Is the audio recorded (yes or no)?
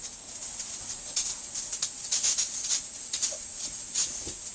no